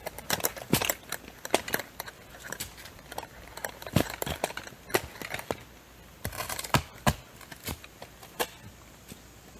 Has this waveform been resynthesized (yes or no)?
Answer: no